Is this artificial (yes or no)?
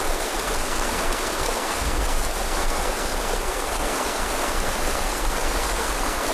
yes